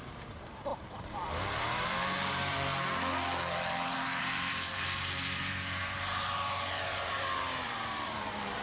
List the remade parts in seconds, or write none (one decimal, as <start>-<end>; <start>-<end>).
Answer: 0.0-2.7; 4.2-8.6